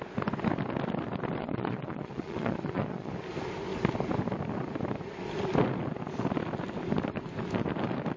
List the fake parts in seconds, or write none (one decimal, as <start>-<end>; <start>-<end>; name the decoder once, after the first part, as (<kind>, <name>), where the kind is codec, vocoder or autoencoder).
1.4-3.1 (vocoder, Vocos)